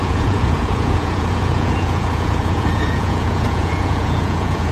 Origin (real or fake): fake